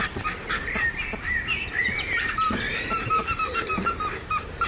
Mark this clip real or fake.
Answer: fake